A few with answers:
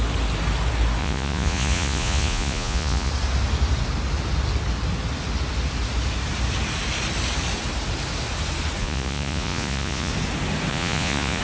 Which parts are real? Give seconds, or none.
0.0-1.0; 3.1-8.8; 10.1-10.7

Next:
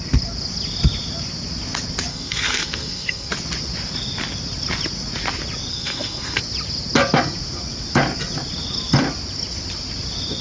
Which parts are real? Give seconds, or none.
0.0-2.1; 3.3-5.7; 6.4-10.4

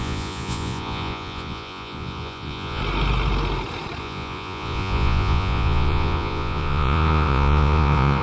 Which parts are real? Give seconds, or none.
2.8-4.0

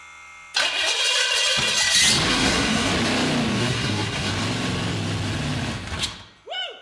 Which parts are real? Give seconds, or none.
0.0-2.3; 2.9-3.6; 4.3-6.8